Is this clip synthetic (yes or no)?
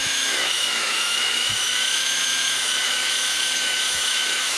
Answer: yes